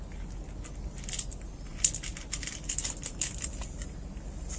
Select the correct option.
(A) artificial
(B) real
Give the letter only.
B